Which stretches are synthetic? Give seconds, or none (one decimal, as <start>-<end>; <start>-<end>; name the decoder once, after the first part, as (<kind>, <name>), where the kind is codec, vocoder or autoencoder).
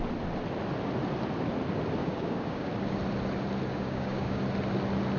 2.0-2.7 (codec, DAC); 3.7-4.4